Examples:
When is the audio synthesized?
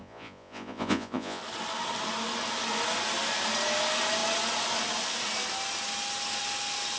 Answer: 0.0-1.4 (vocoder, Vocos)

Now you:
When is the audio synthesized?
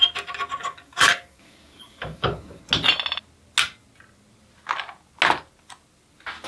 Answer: 0.6-2.6 (codec, DAC)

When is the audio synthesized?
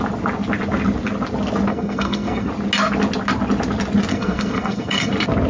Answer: 1.7-2.5 (codec, SNAC); 4.1-5.1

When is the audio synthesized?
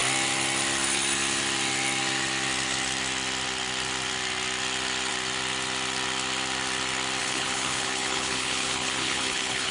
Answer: 7.2-9.7 (codec, HILCodec)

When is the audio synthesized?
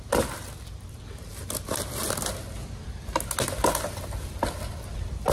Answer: none